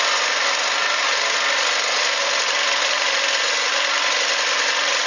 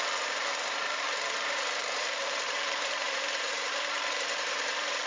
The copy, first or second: second